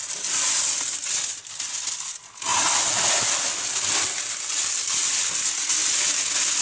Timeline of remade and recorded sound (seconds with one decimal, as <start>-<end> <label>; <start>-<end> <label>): 0.0-6.6 recorded